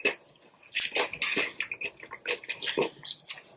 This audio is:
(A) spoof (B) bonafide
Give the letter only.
B